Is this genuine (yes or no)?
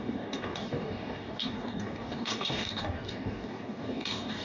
no